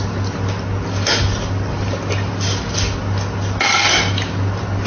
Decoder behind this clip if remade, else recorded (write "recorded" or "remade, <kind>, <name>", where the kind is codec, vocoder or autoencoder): recorded